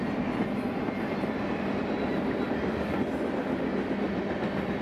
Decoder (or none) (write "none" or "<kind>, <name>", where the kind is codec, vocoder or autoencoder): none